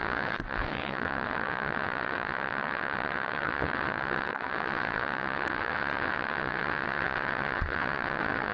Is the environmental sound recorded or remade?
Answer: remade